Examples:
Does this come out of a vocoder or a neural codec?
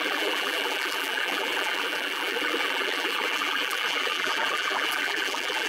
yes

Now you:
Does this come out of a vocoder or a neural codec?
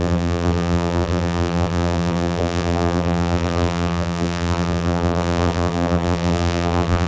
yes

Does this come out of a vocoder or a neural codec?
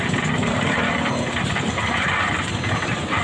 yes